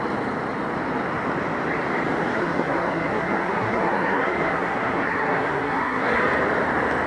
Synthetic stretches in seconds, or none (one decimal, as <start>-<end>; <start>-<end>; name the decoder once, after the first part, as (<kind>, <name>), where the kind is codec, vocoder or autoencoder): 2.3-6.2 (codec, SNAC)

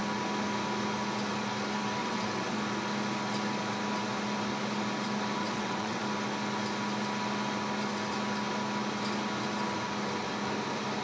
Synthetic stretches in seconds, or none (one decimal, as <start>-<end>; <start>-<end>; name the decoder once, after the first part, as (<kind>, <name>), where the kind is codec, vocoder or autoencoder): 2.0-2.6 (vocoder, WaveNeXt); 5.4-6.0

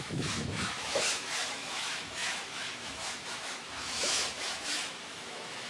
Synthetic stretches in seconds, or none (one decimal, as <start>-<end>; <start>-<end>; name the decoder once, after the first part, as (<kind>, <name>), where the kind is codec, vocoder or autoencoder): 0.0-5.7 (autoencoder, DAC-VAE)